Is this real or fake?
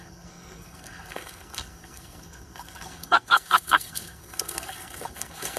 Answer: fake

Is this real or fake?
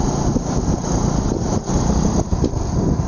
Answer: real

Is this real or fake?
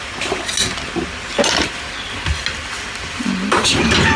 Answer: real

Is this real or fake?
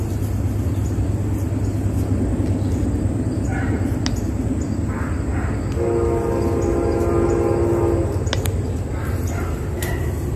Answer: real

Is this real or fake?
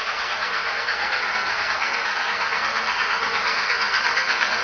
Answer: fake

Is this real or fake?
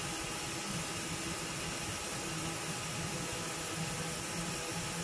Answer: real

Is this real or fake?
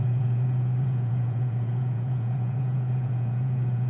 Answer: fake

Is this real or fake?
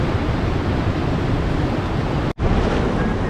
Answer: real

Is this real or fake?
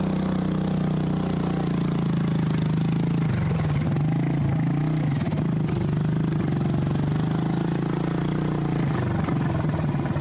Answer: real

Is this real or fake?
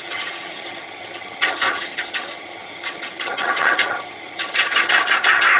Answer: fake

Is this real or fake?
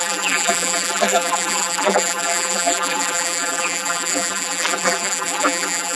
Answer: fake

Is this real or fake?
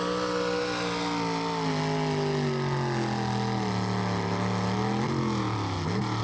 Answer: real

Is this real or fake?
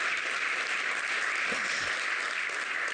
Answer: fake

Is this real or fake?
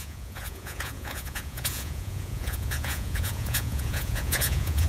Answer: fake